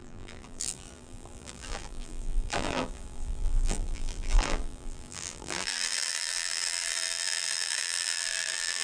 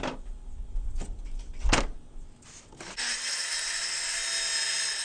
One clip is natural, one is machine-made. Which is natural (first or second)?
second